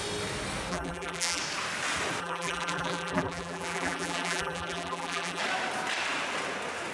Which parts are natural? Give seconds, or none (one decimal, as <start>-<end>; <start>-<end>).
0.0-0.7; 1.4-2.2; 5.4-6.9